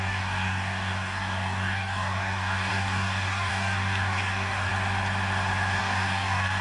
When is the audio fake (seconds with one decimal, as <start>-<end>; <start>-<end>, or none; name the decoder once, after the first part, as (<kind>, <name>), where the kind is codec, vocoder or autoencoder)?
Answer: 0.0-4.7 (codec, DAC); 5.8-6.6